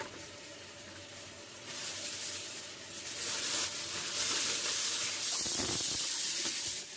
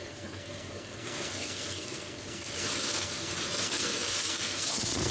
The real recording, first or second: first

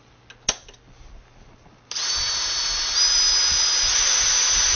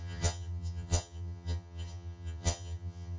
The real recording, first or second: first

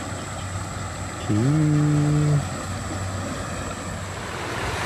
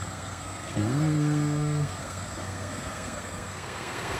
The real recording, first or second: first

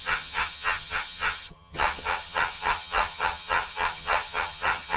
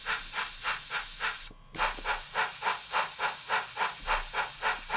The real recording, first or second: second